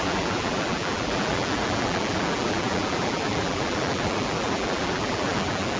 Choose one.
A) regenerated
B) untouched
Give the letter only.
A